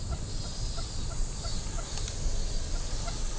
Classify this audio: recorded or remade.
recorded